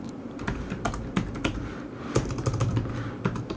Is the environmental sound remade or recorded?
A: recorded